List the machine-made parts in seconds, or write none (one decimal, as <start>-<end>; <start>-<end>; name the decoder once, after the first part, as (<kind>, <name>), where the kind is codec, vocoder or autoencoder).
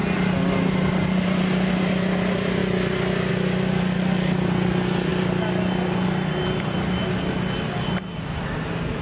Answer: 2.6-3.3 (vocoder, BigVGAN v2); 5.1-8.5